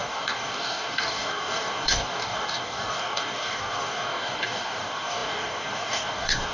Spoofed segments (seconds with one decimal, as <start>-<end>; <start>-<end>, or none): 0.0-6.5